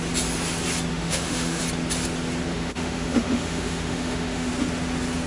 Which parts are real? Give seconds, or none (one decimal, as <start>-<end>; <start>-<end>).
0.0-0.9; 1.6-2.5; 4.5-5.3

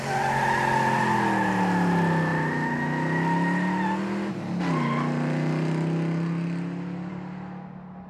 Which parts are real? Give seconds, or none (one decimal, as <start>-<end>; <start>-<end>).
0.0-8.1

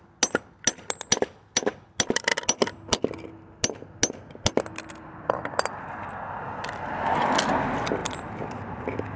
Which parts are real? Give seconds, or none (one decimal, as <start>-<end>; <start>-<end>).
0.0-9.2

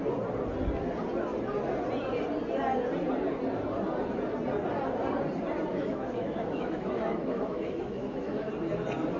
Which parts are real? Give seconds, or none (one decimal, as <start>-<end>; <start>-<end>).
0.0-5.7; 8.5-9.2

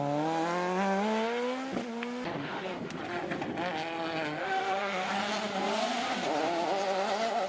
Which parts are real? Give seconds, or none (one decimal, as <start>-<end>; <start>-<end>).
0.0-2.4; 3.0-4.4; 5.1-7.5

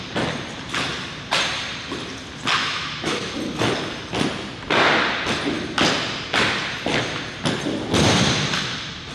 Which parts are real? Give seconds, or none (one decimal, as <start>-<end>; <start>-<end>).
0.0-2.6; 3.3-9.1

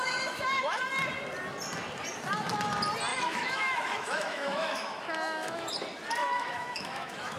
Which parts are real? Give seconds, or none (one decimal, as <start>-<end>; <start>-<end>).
0.8-3.1; 5.7-6.2

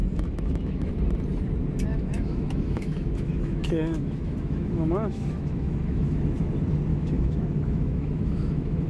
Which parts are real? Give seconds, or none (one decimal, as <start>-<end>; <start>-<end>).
0.9-1.9; 6.5-6.9